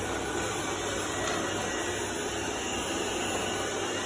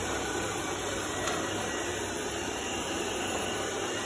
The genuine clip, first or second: first